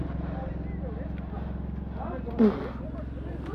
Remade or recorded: recorded